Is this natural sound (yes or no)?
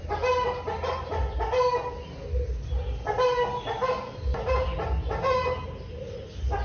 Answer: yes